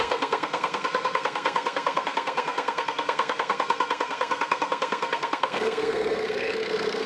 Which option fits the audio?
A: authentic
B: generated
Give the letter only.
B